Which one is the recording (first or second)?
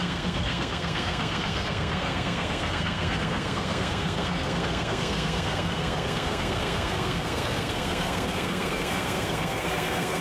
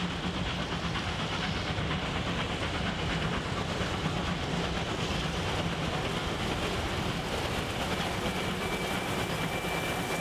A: second